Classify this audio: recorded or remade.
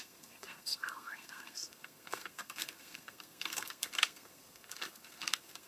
remade